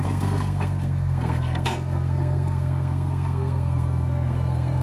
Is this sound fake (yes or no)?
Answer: yes